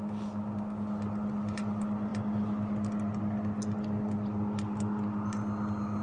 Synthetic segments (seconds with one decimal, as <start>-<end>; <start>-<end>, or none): none